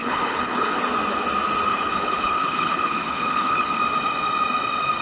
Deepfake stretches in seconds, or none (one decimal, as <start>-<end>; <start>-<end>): 0.0-0.8; 1.7-3.8